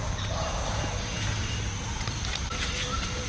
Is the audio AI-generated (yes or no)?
yes